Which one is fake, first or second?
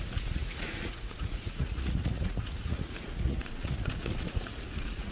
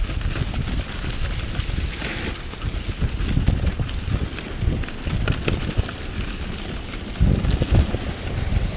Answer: first